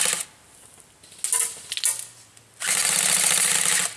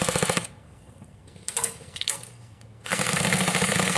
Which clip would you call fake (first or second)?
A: second